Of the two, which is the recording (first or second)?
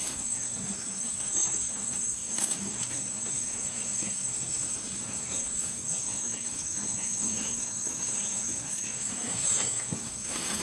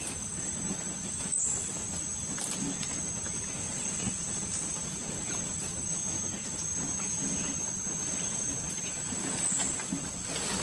second